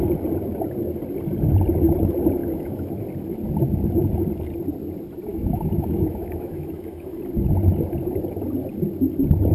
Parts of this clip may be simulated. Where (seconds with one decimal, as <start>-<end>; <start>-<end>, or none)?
2.4-2.9; 5.3-7.2